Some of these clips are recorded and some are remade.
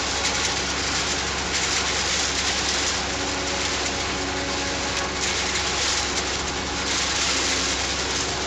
recorded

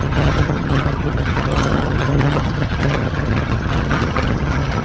remade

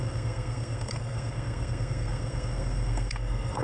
remade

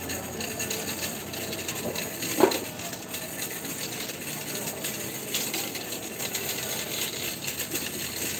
recorded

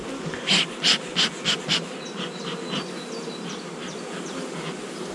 recorded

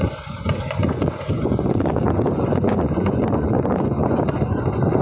remade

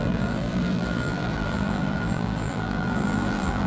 remade